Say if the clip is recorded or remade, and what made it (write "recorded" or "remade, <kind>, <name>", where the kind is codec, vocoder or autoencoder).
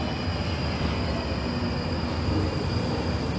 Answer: recorded